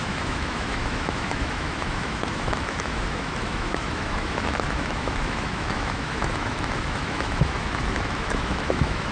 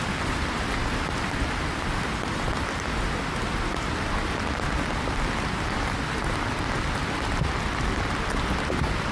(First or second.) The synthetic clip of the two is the first